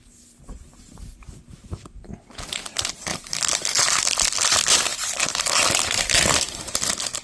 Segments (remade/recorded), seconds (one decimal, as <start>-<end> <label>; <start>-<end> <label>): 0.0-3.1 recorded; 3.1-3.8 remade; 3.8-4.9 recorded; 4.9-6.6 remade; 6.6-7.2 recorded